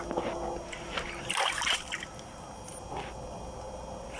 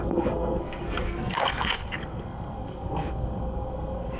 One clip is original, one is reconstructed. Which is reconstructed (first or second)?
second